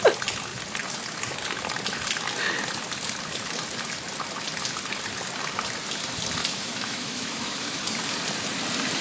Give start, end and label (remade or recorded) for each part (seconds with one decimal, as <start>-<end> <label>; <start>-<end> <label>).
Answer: 0.0-6.4 recorded; 6.4-7.8 remade; 7.8-9.0 recorded